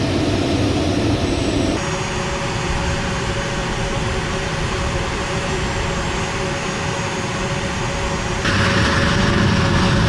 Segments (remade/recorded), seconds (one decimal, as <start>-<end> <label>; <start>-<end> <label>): 0.0-3.6 recorded; 3.6-5.5 remade; 5.5-10.1 recorded